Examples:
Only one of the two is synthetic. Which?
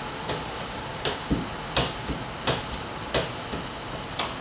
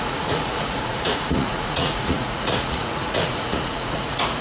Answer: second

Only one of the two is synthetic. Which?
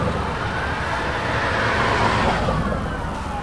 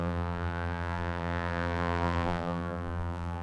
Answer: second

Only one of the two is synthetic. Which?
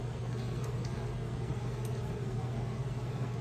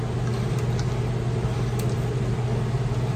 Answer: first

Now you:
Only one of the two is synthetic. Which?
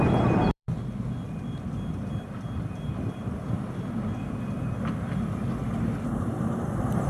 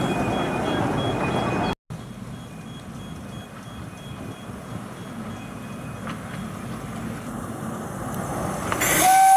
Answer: first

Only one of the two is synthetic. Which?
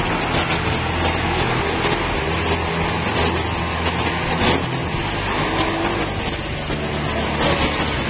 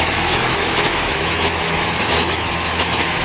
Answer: second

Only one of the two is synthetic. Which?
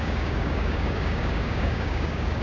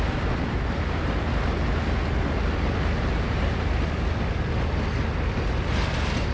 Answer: first